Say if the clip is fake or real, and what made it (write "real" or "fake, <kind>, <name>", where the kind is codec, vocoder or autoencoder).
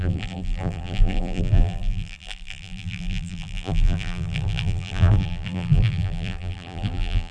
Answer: fake, vocoder, BigVGAN v2